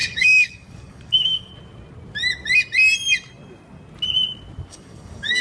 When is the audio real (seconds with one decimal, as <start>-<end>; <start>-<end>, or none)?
1.5-4.7